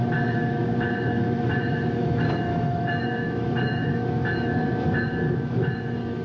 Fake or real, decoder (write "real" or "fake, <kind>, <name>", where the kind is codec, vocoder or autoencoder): fake, autoencoder, DAC-VAE